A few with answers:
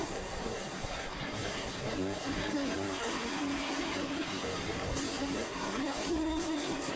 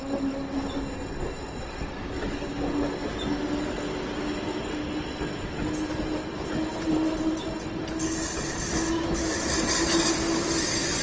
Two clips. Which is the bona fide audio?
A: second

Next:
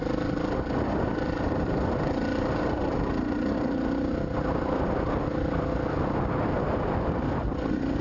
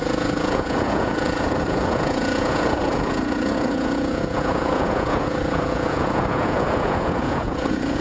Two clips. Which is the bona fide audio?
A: first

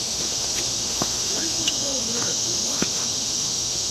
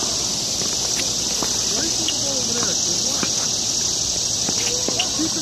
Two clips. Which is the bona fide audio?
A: second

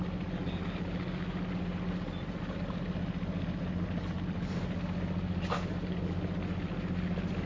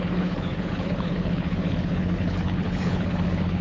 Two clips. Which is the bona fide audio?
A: first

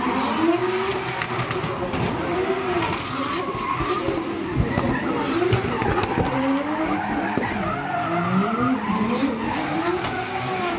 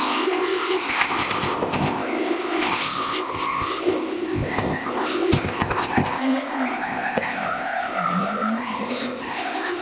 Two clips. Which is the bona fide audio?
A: first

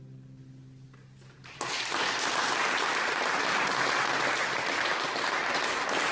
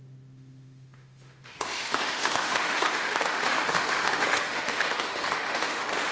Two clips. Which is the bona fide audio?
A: first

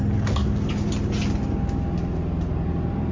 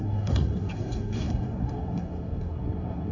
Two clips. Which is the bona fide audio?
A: first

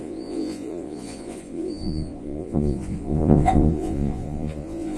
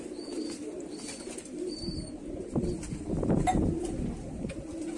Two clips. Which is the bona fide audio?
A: second